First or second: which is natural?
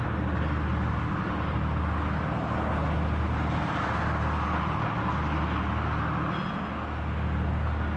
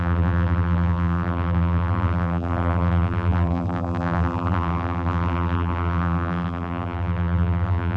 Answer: first